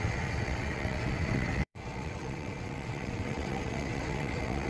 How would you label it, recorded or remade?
remade